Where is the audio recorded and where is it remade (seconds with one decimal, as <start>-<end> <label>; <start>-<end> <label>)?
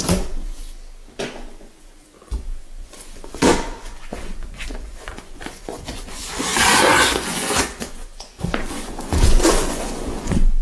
0.0-0.6 remade; 0.6-1.2 recorded; 1.2-10.6 remade